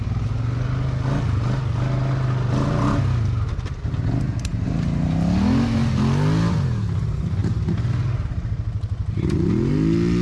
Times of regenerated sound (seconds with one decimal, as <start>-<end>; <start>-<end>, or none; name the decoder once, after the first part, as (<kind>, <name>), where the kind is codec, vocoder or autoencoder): none